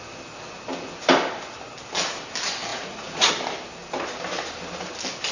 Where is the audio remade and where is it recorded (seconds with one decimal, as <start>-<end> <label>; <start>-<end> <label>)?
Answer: 0.0-2.7 recorded; 2.7-3.3 remade; 3.3-5.3 recorded